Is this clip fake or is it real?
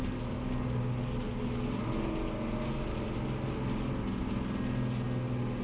real